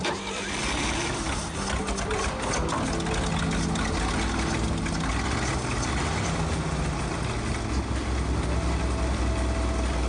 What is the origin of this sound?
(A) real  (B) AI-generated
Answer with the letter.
A